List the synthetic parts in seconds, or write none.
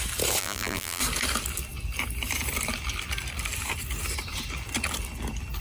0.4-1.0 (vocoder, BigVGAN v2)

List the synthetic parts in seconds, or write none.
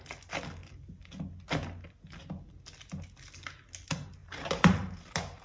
4.2-5.4 (vocoder, BigVGAN v2)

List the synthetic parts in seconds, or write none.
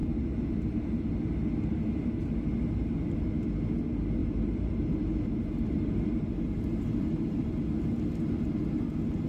0.0-1.1 (vocoder, BigVGAN v2); 4.2-7.5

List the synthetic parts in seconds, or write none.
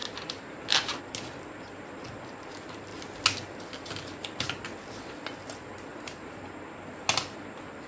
0.0-1.0 (vocoder, BigVGAN v2); 5.9-6.5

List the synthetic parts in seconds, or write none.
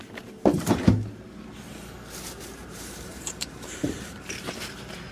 2.6-4.6 (vocoder, BigVGAN v2)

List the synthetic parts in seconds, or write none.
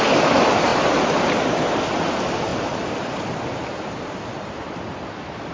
2.5-3.7 (vocoder, BigVGAN v2)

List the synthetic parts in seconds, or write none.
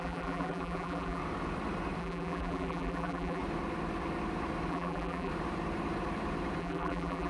0.0-1.2 (vocoder, BigVGAN v2); 2.0-3.4; 4.7-5.3; 6.6-7.3